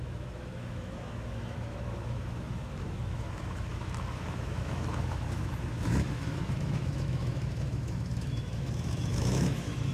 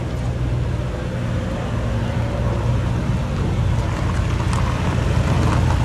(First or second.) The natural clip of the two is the second